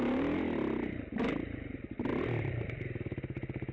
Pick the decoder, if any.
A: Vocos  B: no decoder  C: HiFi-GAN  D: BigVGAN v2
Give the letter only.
B